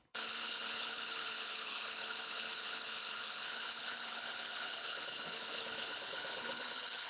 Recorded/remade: remade